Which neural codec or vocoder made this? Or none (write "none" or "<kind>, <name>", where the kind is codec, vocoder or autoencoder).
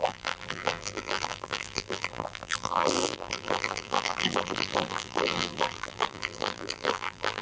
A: vocoder, BigVGAN v2